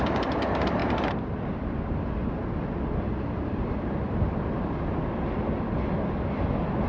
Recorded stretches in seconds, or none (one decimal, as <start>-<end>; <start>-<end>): 0.0-6.9